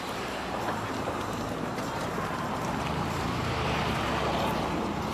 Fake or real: fake